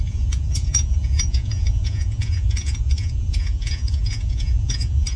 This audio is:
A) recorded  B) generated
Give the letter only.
B